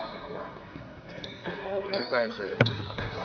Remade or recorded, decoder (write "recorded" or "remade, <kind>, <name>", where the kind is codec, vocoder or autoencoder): remade, codec, SNAC